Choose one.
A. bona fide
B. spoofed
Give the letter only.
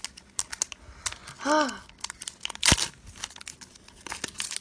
A